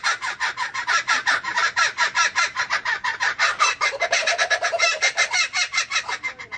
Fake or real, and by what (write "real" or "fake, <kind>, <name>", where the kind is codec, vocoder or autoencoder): fake, vocoder, BigVGAN v2